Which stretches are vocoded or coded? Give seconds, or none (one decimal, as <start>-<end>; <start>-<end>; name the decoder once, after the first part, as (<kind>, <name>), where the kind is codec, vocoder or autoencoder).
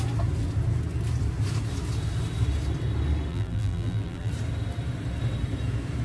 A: 3.3-4.3 (vocoder, BigVGAN v2)